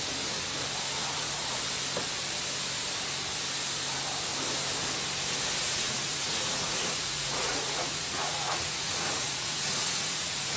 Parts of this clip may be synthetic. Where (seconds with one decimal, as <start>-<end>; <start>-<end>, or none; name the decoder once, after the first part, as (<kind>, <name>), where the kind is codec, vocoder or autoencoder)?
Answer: 1.0-1.6 (vocoder, Vocos); 5.6-10.6